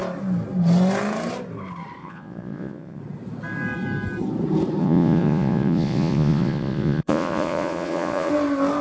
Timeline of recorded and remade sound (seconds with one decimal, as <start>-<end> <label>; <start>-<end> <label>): 0.0-2.0 recorded; 2.0-3.0 remade; 3.0-4.8 recorded; 4.8-8.3 remade; 8.3-8.8 recorded